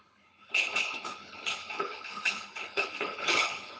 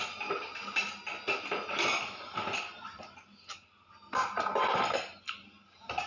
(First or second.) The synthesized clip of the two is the first